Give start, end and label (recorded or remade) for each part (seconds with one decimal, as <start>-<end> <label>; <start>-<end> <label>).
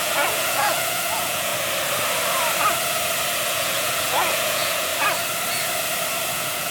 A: 0.0-1.5 remade; 1.5-3.5 recorded; 3.5-4.9 remade; 4.9-6.3 recorded; 6.3-6.7 remade